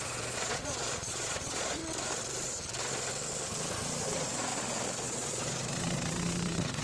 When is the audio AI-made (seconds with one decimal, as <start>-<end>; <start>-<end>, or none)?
0.0-1.8; 4.1-4.5; 5.0-6.8